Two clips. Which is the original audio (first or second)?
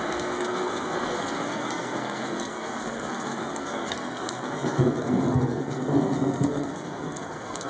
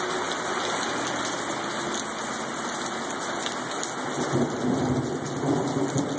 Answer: second